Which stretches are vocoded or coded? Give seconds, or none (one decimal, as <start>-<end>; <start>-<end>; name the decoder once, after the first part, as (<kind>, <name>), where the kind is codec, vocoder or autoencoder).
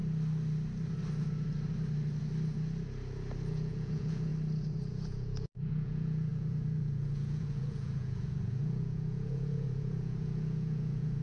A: 3.5-4.3 (vocoder, Vocos); 4.9-11.2